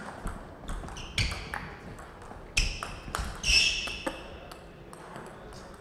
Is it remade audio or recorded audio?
recorded